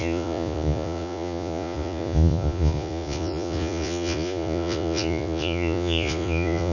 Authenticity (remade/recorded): remade